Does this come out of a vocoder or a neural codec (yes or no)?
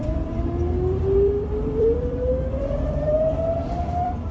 yes